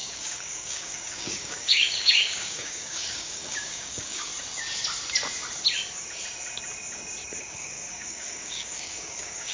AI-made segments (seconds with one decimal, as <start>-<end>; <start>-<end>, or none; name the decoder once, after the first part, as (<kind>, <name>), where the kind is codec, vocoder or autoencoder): 0.0-4.3 (codec, DAC); 7.4-9.5